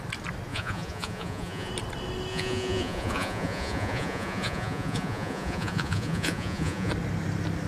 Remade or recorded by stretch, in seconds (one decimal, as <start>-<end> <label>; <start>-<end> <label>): 0.0-0.5 recorded; 0.5-1.7 remade; 1.7-2.3 recorded; 2.3-6.9 remade; 6.9-7.7 recorded